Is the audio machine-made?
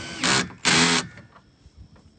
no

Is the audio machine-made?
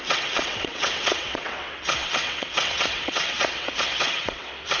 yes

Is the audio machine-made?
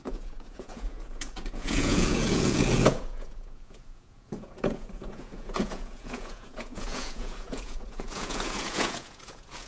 yes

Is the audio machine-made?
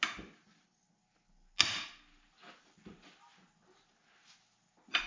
no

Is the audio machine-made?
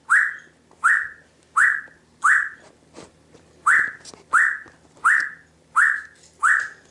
no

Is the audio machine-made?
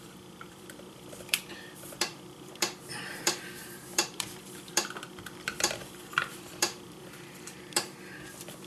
yes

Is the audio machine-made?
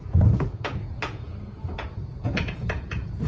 yes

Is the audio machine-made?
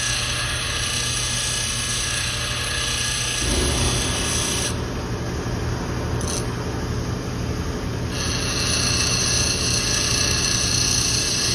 no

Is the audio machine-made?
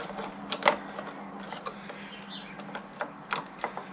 no